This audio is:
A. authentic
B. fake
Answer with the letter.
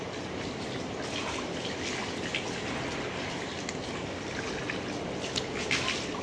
A